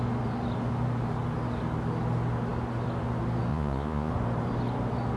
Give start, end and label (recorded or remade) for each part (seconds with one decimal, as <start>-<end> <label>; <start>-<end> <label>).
0.0-3.5 recorded; 3.5-4.1 remade; 4.1-5.2 recorded